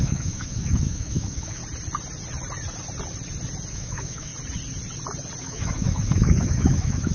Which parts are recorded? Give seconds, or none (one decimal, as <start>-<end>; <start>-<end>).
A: 1.6-3.7; 4.3-5.4